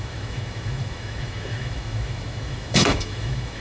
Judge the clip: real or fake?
fake